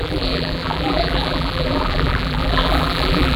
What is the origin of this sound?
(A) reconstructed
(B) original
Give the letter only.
A